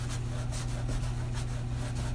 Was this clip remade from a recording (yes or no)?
no